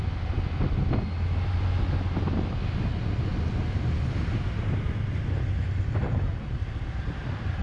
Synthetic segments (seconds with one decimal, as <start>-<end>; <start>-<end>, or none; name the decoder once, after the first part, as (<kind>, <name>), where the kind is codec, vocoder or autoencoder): none